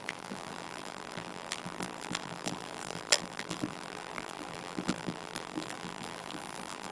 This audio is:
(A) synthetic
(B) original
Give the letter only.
A